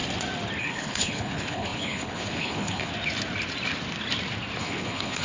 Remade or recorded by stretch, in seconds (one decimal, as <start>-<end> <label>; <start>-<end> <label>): 0.0-0.6 recorded; 0.6-2.9 remade; 2.9-4.6 recorded; 4.6-5.2 remade